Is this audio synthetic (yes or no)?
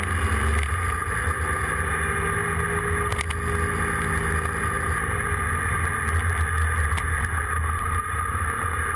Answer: no